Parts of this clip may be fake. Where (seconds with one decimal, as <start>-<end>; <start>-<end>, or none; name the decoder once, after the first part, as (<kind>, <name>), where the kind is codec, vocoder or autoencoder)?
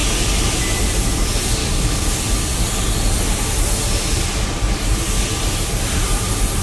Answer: 1.6-2.1 (codec, DAC)